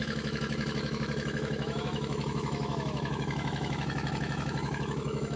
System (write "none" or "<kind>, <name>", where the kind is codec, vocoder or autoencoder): autoencoder, DAC-VAE